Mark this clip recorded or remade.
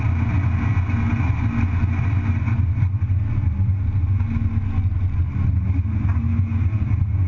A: recorded